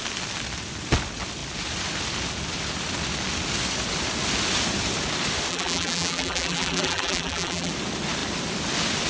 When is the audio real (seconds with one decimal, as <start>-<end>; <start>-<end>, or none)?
0.0-5.5; 7.7-9.1